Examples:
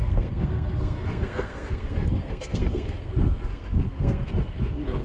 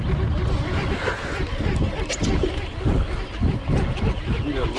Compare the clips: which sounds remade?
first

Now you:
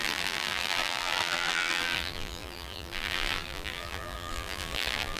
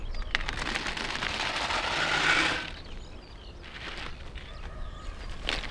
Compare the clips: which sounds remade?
first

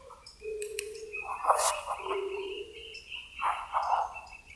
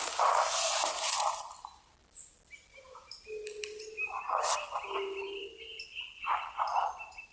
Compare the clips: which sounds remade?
first